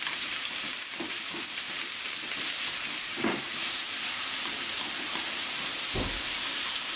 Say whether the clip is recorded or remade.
remade